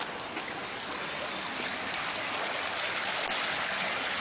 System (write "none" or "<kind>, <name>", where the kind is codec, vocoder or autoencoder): none